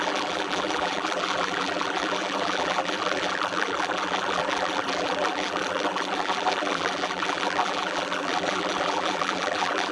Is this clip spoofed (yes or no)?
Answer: yes